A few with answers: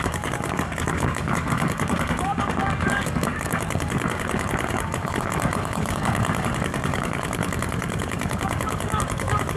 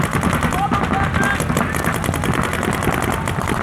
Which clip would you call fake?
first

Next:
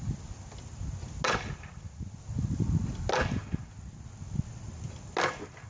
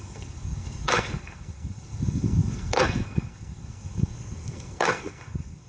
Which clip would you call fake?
second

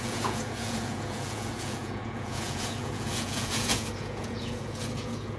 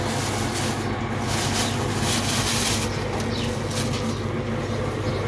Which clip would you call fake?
first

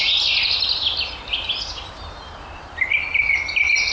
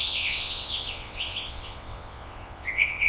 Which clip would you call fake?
second